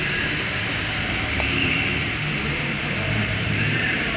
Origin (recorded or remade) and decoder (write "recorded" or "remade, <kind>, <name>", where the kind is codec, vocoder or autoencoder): remade, vocoder, BigVGAN v2